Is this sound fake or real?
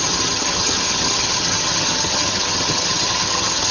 fake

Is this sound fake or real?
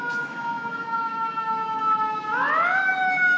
fake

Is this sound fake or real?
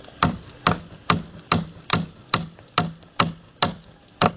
real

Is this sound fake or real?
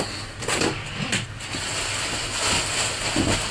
real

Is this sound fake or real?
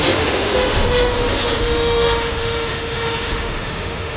fake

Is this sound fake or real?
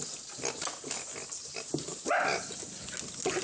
real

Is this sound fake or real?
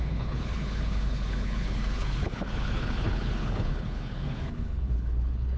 fake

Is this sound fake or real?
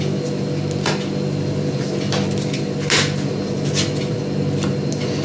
real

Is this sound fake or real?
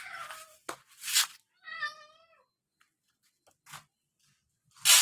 real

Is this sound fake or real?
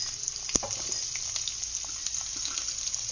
real